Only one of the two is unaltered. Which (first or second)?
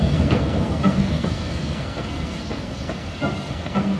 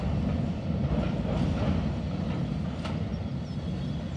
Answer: second